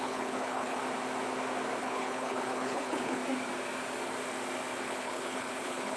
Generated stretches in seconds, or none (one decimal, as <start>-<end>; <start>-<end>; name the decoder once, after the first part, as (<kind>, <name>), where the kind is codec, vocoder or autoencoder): 0.0-0.8 (codec, HILCodec); 1.8-3.2; 4.8-6.0